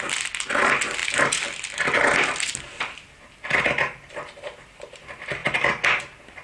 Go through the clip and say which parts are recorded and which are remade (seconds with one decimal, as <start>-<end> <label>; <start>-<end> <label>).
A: 0.0-6.4 recorded